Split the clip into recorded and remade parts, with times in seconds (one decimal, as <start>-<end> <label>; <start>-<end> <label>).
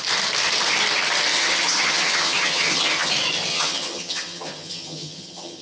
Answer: 0.0-1.3 recorded; 1.3-3.1 remade; 3.1-3.5 recorded; 3.5-5.6 remade